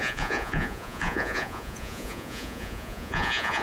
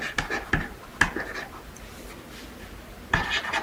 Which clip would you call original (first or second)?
second